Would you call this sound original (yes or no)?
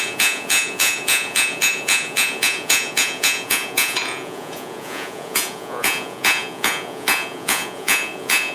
no